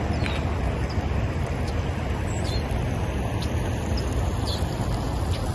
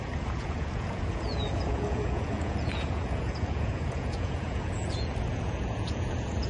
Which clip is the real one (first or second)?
first